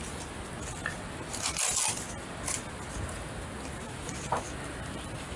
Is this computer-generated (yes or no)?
no